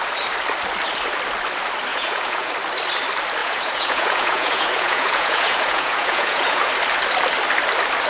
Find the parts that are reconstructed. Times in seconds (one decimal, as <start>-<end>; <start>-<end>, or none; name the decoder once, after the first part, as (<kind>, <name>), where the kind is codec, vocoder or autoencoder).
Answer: 1.9-2.5 (vocoder, Vocos); 3.4-6.7